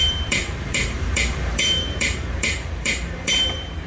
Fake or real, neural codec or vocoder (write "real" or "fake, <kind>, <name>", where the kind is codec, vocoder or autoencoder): fake, vocoder, BigVGAN v2